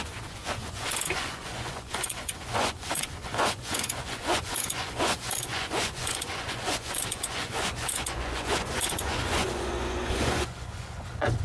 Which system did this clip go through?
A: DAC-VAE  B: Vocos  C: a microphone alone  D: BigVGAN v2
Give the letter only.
B